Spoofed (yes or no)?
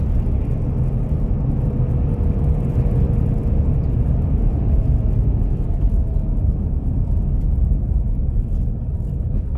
no